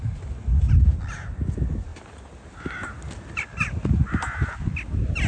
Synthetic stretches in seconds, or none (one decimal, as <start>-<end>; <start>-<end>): none